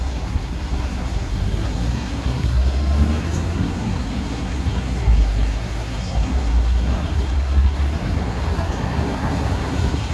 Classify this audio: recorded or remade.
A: remade